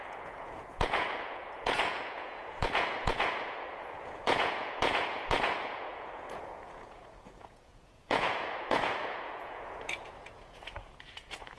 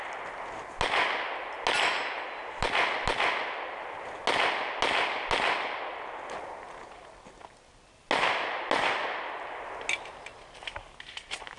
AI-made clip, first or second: first